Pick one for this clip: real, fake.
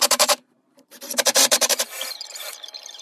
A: fake